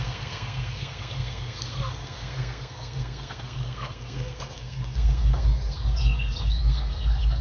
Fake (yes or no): yes